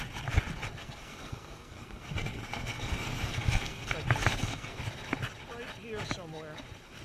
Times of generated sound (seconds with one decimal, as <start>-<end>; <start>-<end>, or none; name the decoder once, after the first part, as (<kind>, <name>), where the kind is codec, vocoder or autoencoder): 0.8-3.9 (codec, SNAC); 4.3-4.8